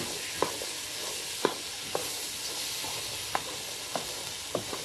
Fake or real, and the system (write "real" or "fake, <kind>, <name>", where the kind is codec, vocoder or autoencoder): real